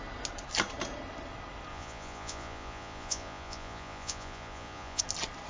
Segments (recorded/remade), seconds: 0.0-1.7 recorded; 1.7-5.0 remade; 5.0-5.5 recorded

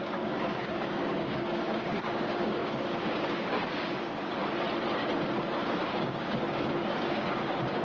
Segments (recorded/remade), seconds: 0.0-4.4 remade; 4.4-5.7 recorded; 5.7-7.8 remade

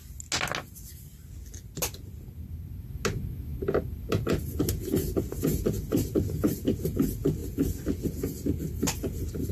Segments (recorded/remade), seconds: 0.0-9.5 recorded